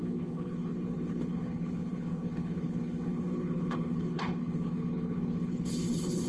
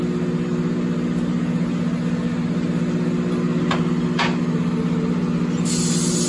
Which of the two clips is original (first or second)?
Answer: second